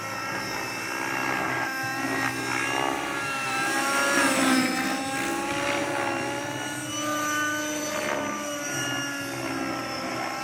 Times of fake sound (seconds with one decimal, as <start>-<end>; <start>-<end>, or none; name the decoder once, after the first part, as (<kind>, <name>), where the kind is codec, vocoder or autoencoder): none